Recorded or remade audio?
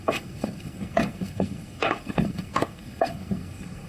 remade